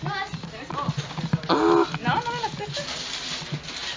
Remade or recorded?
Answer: recorded